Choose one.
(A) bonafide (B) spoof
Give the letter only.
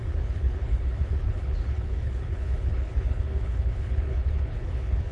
B